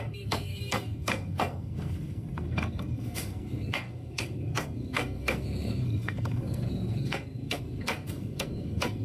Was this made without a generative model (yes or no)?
no